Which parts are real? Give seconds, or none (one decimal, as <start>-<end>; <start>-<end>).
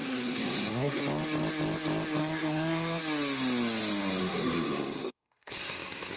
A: 1.0-2.2; 3.0-4.2